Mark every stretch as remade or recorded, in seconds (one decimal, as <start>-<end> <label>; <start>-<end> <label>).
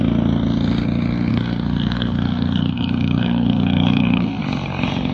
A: 0.0-1.3 recorded; 1.3-4.4 remade; 4.4-5.1 recorded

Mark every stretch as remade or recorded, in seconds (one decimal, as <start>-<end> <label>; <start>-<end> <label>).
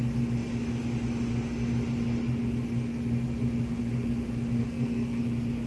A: 0.0-4.6 recorded; 4.6-5.2 remade; 5.2-5.7 recorded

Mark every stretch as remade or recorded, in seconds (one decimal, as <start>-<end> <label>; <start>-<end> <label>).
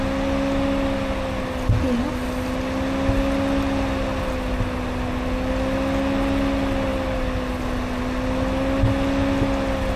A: 0.0-10.0 recorded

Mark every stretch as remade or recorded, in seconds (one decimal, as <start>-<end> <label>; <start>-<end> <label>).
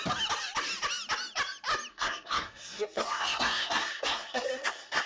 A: 0.0-1.9 recorded; 1.9-5.1 remade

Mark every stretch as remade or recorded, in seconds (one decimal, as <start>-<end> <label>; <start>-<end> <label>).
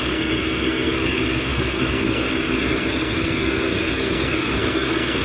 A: 0.0-5.2 remade